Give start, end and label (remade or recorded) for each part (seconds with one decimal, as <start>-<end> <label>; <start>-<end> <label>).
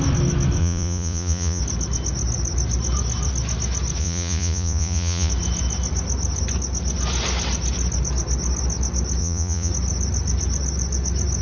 0.0-0.6 recorded; 0.6-1.6 remade; 1.6-4.0 recorded; 4.0-5.3 remade; 5.3-9.2 recorded; 9.2-9.7 remade; 9.7-11.4 recorded